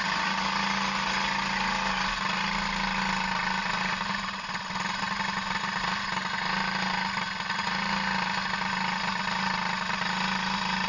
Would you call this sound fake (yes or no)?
no